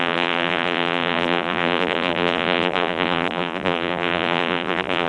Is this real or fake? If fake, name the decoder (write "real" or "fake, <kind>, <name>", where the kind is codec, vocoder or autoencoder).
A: fake, vocoder, BigVGAN v2